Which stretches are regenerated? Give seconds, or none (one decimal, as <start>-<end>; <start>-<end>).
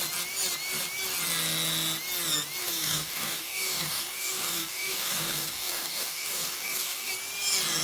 2.6-7.1